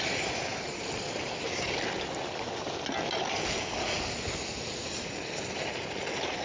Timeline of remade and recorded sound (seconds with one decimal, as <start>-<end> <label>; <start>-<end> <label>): 0.0-6.4 recorded